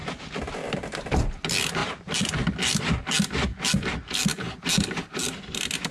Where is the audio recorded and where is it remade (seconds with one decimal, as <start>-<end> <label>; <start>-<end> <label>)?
0.0-1.8 recorded; 1.8-2.8 remade; 2.8-5.9 recorded